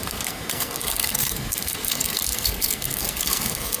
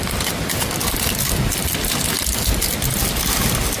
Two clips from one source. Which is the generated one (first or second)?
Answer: first